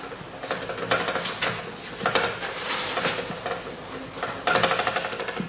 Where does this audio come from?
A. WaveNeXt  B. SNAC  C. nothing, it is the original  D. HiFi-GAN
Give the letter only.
C